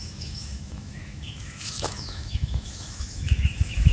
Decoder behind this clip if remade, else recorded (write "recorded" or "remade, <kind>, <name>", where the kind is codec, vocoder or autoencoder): remade, autoencoder, DAC-VAE